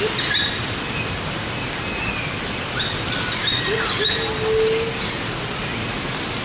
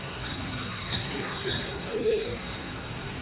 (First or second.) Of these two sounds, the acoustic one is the first